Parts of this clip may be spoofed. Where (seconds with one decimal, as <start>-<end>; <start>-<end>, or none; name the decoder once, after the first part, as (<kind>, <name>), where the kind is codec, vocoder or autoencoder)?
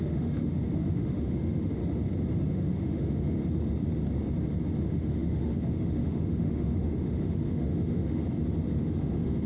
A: 0.0-1.8 (autoencoder, DAC-VAE); 2.5-3.4; 4.8-8.2; 8.8-9.5